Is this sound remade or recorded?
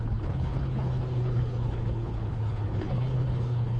remade